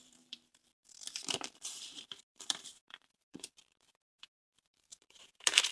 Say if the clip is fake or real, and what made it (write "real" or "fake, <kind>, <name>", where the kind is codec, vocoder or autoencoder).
fake, vocoder, BigVGAN v2